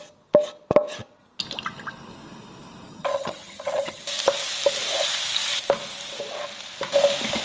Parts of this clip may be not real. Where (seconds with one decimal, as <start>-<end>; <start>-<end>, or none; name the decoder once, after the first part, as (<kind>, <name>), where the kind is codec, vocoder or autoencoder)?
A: 2.9-4.0 (vocoder, HiFi-GAN)